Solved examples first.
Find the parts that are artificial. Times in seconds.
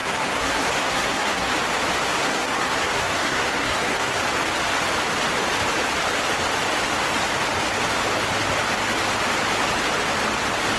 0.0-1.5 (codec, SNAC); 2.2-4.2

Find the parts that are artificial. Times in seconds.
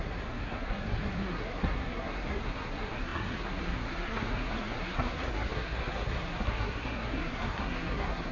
0.0-8.3 (codec, SNAC)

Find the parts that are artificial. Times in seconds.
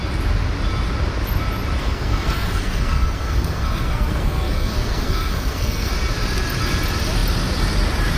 1.8-5.9 (codec, SNAC)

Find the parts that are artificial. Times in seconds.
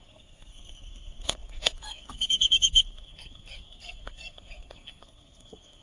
0.0-5.8 (codec, SNAC)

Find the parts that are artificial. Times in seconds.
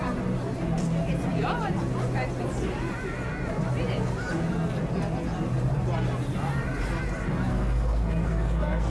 7.5-8.9 (codec, SNAC)